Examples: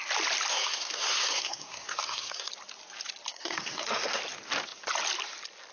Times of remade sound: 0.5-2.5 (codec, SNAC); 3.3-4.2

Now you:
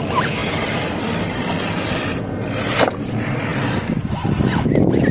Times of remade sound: none

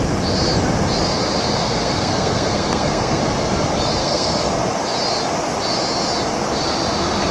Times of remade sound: 1.6-3.2 (codec, SNAC); 4.0-4.5